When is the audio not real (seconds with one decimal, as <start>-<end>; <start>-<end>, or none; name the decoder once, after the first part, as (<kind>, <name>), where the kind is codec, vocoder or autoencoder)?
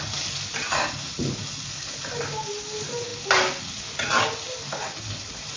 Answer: none